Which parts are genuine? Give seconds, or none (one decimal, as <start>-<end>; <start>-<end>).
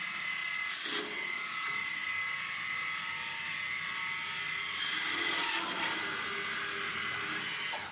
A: 0.0-7.9